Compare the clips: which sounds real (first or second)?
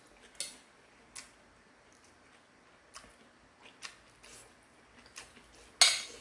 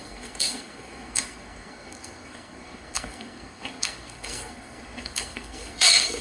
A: first